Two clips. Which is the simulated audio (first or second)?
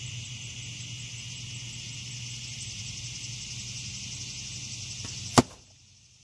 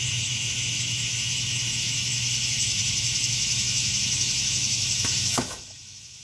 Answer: second